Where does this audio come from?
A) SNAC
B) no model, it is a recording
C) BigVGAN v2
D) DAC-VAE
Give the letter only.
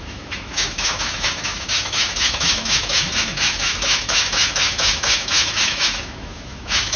D